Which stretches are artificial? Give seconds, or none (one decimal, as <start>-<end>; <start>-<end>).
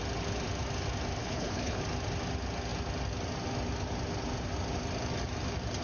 1.2-1.8